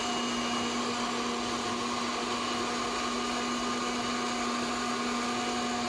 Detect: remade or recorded recorded